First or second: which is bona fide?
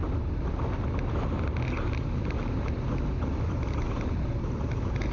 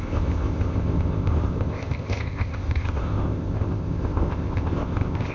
first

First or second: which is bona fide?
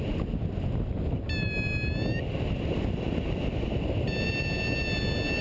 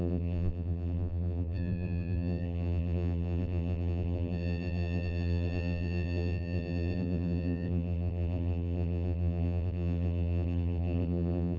first